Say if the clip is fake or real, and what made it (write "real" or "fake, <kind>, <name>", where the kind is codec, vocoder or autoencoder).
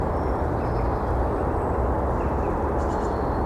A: real